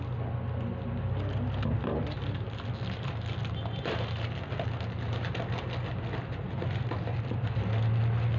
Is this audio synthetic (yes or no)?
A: no